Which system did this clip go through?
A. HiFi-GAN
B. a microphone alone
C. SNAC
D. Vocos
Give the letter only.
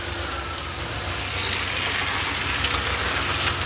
B